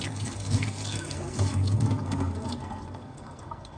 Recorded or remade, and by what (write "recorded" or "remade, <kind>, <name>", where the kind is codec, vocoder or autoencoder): remade, codec, SNAC